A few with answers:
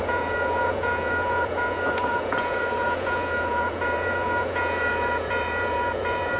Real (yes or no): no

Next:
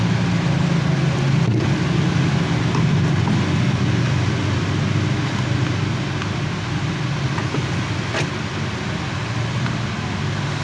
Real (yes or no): yes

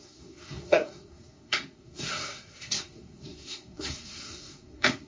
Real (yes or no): no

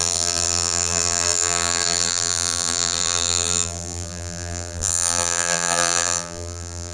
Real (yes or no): no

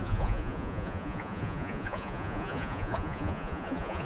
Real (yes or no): no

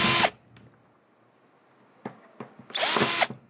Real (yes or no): yes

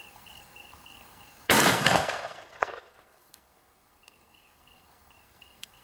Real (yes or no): no